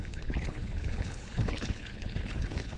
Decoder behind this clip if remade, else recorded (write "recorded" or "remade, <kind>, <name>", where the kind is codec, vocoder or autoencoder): remade, codec, HILCodec